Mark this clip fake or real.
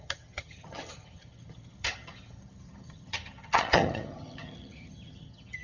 fake